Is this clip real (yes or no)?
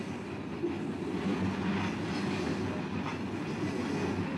yes